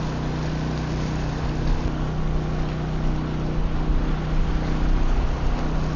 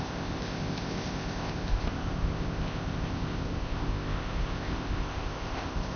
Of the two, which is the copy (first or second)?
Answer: second